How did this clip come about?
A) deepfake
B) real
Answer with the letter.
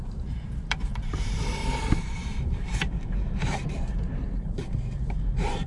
A